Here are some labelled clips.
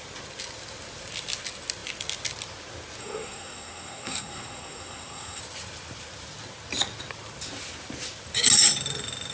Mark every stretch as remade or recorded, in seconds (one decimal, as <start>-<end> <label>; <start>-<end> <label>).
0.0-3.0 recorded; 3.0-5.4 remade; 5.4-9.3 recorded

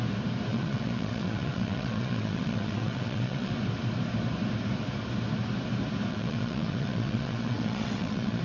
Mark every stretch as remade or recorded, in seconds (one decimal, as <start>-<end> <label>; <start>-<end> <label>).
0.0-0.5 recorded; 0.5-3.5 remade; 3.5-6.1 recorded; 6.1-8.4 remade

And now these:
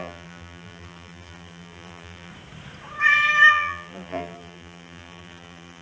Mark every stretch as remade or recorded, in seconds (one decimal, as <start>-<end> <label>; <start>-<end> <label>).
0.0-2.3 remade; 2.3-3.5 recorded; 3.5-5.8 remade

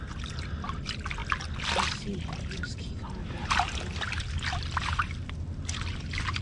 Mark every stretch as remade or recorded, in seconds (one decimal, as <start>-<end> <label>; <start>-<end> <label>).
0.0-6.4 recorded